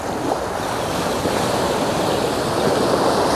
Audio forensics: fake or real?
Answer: real